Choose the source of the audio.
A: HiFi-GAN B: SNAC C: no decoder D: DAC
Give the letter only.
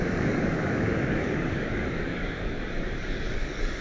D